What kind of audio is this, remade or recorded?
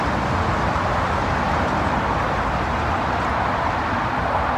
recorded